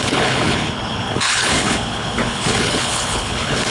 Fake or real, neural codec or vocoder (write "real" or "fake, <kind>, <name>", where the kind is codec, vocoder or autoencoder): fake, codec, HILCodec